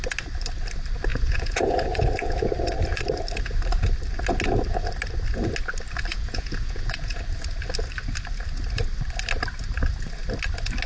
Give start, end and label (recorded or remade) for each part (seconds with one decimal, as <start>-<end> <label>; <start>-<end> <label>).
0.0-1.1 recorded; 1.1-2.5 remade; 2.5-6.1 recorded; 6.1-7.2 remade; 7.2-10.9 recorded